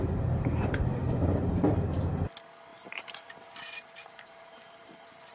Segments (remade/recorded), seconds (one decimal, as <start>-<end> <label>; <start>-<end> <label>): 0.0-1.0 recorded; 1.0-1.6 remade; 1.6-2.7 recorded; 2.7-5.3 remade